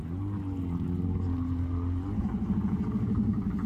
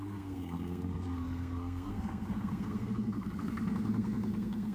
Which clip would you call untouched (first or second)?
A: first